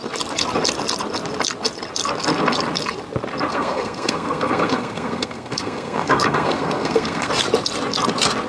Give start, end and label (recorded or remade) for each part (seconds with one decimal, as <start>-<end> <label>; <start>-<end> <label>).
0.0-3.5 recorded; 3.5-7.3 remade; 7.3-8.5 recorded